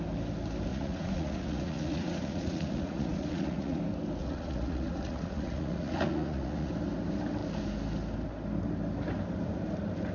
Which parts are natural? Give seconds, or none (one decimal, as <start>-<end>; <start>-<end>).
0.0-0.7; 3.8-4.2; 6.7-10.1